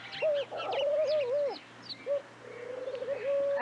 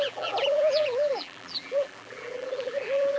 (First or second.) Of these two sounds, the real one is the first